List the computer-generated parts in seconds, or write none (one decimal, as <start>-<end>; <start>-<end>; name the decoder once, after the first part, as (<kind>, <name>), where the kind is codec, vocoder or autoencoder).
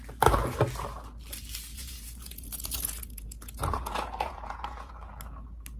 1.7-4.9 (vocoder, Vocos)